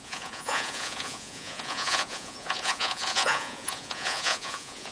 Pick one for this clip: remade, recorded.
remade